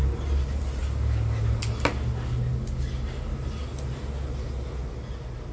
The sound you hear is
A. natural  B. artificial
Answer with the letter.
A